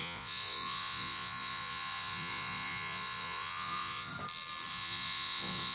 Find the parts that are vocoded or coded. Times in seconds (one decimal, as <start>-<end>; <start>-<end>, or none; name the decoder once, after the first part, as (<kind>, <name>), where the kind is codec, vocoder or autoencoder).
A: 0.0-4.1 (vocoder, Vocos); 4.7-5.7